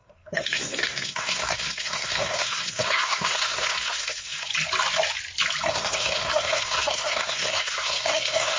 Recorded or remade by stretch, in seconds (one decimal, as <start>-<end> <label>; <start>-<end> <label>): 0.0-4.5 remade; 4.5-5.7 recorded; 5.7-8.6 remade